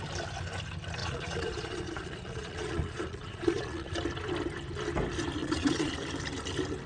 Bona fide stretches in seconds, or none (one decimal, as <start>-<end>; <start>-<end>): 0.0-1.0; 3.9-5.4; 5.9-6.9